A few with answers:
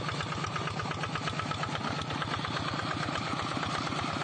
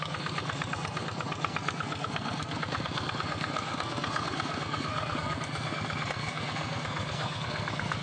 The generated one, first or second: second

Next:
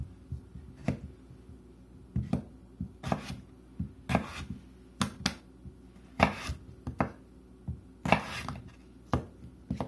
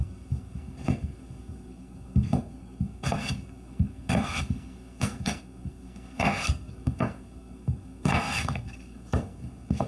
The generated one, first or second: second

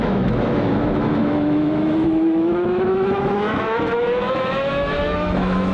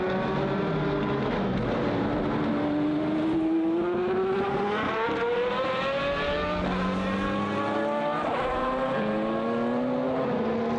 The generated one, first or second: first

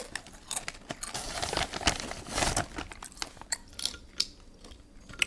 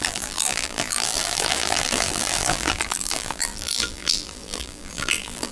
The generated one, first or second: second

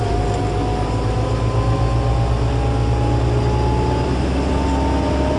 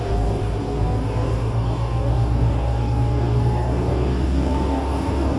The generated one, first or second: second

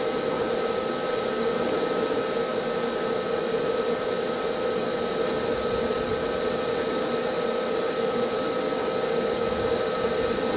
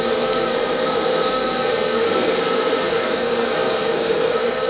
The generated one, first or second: second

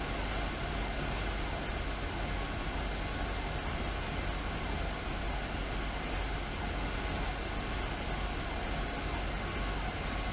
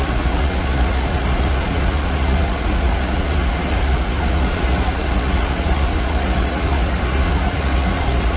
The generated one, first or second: second